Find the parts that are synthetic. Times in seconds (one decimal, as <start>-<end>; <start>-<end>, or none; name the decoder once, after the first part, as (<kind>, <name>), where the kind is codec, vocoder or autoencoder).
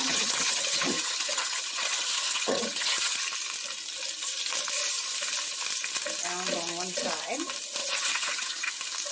0.0-3.2 (vocoder, HiFi-GAN); 7.8-8.7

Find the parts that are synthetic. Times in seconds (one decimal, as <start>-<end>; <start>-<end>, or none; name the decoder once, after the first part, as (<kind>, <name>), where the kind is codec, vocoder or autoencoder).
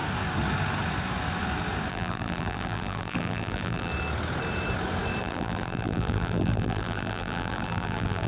1.9-3.9 (vocoder, BigVGAN v2); 5.2-8.3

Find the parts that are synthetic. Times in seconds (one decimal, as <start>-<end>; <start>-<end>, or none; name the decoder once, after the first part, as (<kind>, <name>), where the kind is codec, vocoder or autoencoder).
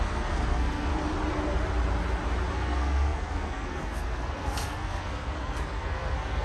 0.0-0.9 (codec, SNAC); 2.5-6.4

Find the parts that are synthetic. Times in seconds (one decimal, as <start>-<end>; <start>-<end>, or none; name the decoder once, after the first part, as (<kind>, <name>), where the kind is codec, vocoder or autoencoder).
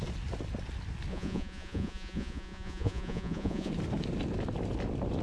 1.1-3.7 (vocoder, Vocos)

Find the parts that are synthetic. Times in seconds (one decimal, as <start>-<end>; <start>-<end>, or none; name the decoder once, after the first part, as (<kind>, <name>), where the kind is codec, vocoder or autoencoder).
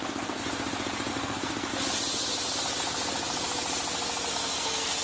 0.0-0.4 (codec, SNAC); 1.1-1.7; 4.3-5.0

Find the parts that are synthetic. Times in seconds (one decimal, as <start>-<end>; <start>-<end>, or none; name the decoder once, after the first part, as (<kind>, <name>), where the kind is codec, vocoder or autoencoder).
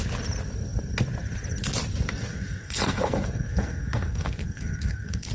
2.3-5.3 (codec, SNAC)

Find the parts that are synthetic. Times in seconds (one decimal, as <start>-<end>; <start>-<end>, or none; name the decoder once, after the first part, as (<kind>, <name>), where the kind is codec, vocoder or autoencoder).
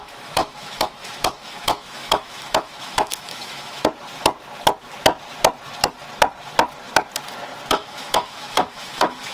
0.0-3.8 (autoencoder, DAC-VAE); 7.7-9.3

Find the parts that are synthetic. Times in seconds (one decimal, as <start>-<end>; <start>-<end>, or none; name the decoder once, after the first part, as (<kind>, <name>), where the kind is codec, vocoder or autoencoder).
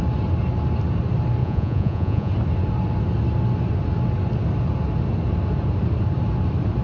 1.4-2.3 (vocoder, Vocos)